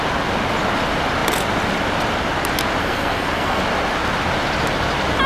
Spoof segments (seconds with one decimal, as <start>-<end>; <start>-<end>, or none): 2.8-3.6